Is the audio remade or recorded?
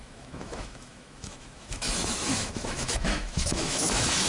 remade